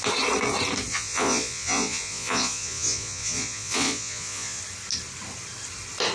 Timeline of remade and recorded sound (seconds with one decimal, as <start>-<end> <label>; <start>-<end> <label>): 0.0-0.9 recorded; 0.9-4.6 remade; 4.6-6.1 recorded